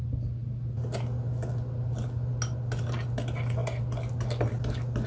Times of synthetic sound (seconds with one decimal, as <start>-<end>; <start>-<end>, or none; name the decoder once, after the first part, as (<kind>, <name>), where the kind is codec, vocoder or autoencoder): none